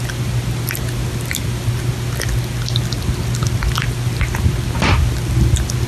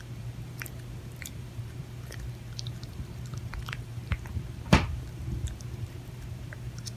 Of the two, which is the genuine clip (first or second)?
first